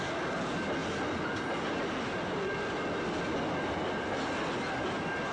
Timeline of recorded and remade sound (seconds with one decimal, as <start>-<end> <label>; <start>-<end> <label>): 0.0-5.3 recorded